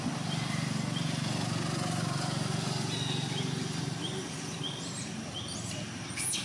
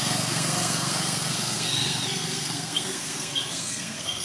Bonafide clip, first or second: first